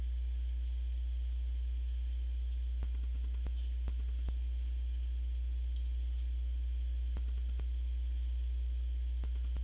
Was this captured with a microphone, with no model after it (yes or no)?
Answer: yes